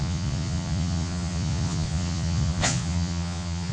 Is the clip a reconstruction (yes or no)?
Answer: yes